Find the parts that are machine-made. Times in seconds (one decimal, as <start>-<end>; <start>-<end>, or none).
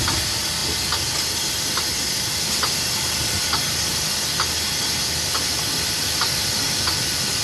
none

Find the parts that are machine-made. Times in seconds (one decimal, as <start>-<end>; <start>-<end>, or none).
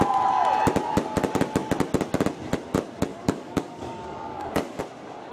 3.1-4.8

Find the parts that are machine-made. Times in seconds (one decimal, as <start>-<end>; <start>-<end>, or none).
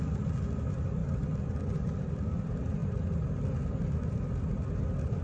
1.0-2.1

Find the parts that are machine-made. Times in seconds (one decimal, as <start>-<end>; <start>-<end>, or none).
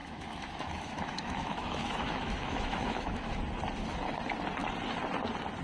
0.0-3.4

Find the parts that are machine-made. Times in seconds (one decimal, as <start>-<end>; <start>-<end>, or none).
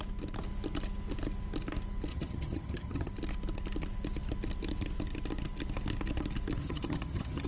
2.1-3.1; 6.6-7.5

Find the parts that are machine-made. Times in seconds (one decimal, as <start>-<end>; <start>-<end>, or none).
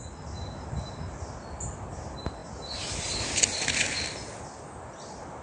none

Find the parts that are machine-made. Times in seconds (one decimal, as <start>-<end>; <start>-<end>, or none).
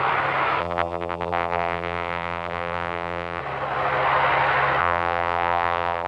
0.6-3.4; 4.8-6.1